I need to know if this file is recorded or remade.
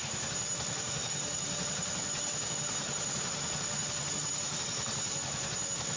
recorded